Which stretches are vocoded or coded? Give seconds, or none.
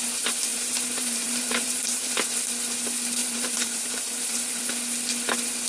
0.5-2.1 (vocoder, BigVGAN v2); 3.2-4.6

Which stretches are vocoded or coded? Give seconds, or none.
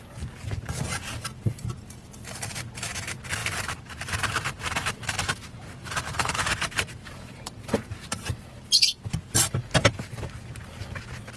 3.4-8.5 (vocoder, BigVGAN v2)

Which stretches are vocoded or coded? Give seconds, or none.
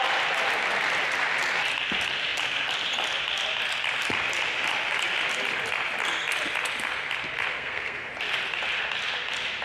7.5-8.1 (codec, SNAC)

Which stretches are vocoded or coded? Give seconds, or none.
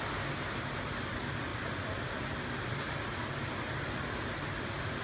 none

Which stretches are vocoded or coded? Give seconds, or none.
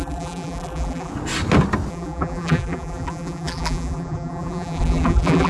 0.0-1.1 (vocoder, BigVGAN v2); 1.9-5.5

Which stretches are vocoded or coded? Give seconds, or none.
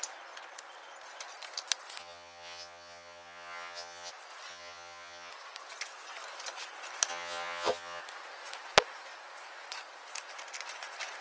2.0-4.1 (vocoder, HiFi-GAN); 4.5-5.3; 7.1-8.0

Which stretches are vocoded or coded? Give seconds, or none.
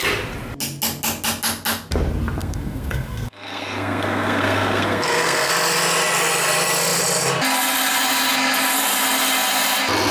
2.4-5.5 (codec, SNAC)